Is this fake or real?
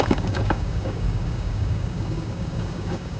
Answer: fake